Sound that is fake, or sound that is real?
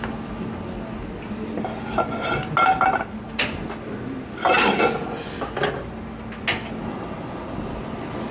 real